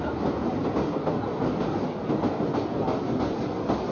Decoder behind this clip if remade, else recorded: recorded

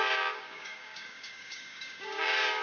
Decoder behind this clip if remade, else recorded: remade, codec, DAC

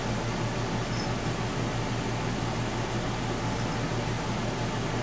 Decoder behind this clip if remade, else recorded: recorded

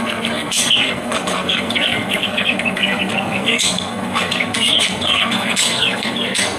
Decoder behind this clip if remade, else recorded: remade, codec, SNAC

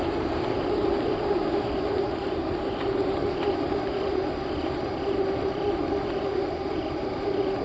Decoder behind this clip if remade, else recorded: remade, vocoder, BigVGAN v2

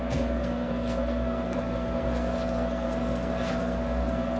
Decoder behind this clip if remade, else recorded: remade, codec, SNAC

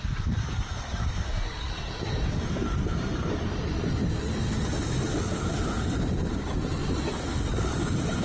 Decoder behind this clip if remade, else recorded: remade, vocoder, BigVGAN v2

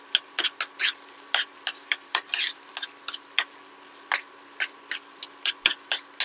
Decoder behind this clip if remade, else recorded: recorded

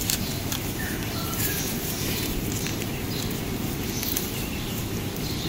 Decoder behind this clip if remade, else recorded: remade, vocoder, BigVGAN v2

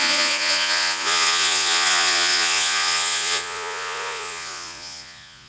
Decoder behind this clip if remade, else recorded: remade, vocoder, Vocos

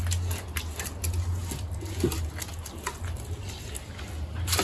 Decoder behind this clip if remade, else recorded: recorded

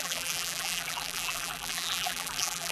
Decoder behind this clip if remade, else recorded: remade, vocoder, BigVGAN v2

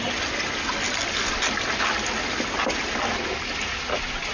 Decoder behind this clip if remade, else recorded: recorded